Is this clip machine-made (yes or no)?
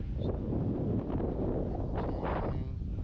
no